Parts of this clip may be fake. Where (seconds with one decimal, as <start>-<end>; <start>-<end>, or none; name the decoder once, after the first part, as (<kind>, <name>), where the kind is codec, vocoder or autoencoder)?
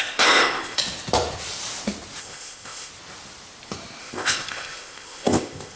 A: 0.0-0.8 (codec, ZipCodec); 2.2-2.9; 4.0-5.8